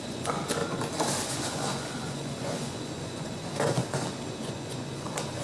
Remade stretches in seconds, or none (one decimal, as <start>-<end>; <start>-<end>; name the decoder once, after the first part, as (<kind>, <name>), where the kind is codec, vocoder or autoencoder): 0.0-0.6 (vocoder, Vocos); 1.3-3.8; 4.4-5.4